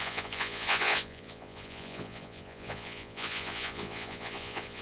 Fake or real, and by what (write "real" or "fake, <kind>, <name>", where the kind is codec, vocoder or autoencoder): fake, vocoder, Vocos